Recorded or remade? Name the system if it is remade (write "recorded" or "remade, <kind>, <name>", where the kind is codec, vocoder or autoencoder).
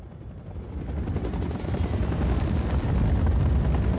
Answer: recorded